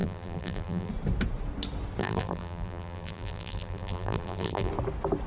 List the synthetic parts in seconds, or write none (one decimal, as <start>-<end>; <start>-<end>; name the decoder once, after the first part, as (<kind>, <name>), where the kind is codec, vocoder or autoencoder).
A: 0.0-0.9 (vocoder, BigVGAN v2); 2.0-4.7